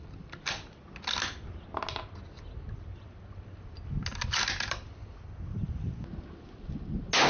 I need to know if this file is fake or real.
real